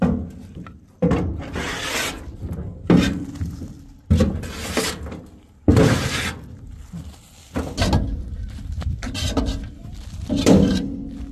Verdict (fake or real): real